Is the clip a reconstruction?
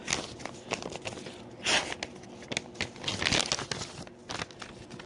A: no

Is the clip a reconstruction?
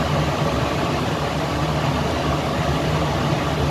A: no